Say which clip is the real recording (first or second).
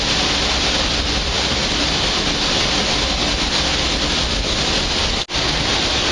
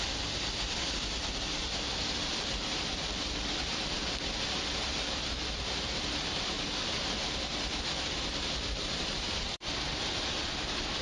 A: first